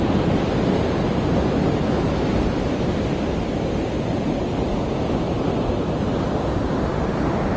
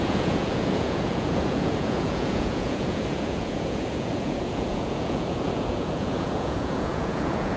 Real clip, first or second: first